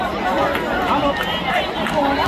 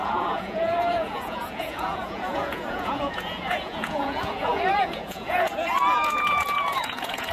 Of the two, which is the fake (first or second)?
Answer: second